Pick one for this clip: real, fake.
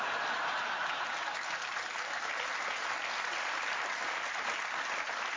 real